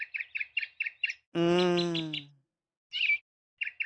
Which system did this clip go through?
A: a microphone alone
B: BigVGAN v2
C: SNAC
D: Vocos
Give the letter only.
A